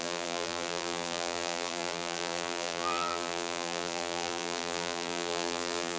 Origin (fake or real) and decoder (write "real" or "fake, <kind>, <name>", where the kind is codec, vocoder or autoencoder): fake, vocoder, BigVGAN v2